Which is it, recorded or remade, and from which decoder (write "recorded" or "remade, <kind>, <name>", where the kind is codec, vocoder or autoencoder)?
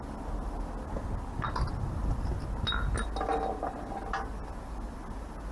recorded